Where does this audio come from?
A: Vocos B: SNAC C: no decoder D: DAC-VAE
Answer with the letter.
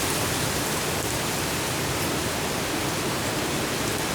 C